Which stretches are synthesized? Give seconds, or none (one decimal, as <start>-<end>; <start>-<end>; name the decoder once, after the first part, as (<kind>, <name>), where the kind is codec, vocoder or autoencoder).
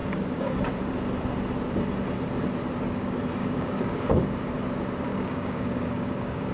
0.0-0.7 (codec, DAC); 3.4-4.2; 5.1-6.5